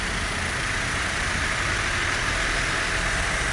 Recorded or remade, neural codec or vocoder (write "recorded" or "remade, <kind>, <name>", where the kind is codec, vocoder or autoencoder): recorded